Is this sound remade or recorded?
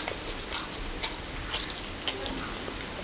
recorded